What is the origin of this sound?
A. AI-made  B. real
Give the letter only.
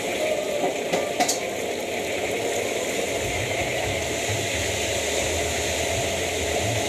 B